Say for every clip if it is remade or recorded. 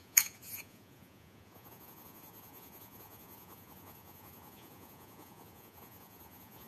remade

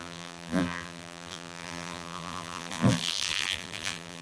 remade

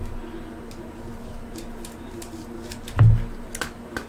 recorded